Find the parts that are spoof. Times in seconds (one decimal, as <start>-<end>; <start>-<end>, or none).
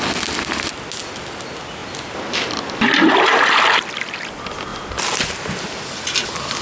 none